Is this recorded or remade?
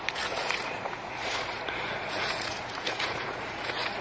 remade